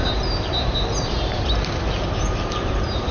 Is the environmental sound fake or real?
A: real